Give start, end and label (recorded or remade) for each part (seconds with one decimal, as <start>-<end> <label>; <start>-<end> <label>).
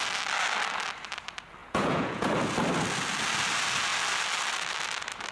0.0-1.6 recorded; 1.6-2.3 remade; 2.3-5.3 recorded